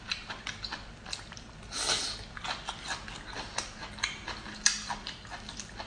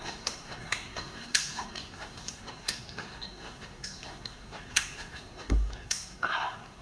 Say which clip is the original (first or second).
first